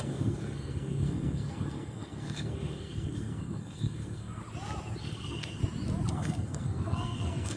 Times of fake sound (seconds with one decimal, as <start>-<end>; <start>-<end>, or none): 0.0-4.4; 5.0-5.6; 6.1-7.6

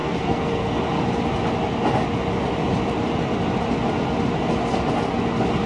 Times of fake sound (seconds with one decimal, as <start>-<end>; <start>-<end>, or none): 0.0-0.8